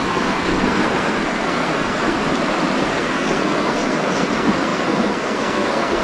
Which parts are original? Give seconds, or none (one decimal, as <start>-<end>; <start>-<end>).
2.2-2.8